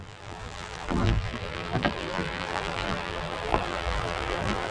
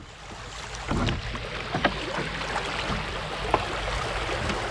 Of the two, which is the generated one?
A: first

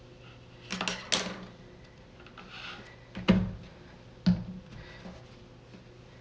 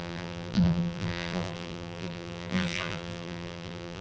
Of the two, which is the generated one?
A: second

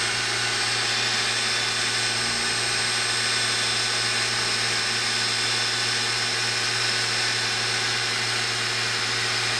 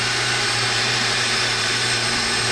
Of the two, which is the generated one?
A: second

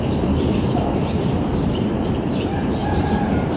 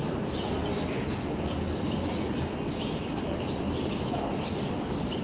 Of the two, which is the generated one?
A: first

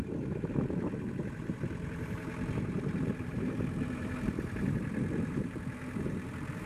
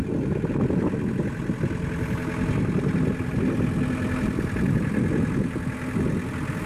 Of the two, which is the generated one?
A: first